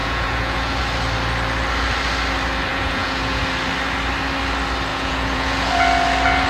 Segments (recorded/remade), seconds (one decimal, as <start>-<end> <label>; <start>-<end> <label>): 0.0-0.8 remade; 0.8-2.7 recorded; 2.7-3.4 remade; 3.4-4.9 recorded; 4.9-5.7 remade; 5.7-6.5 recorded